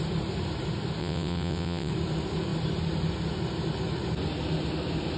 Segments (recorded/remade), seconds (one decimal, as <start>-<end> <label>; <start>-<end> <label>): 0.0-1.0 recorded; 1.0-1.9 remade; 1.9-5.2 recorded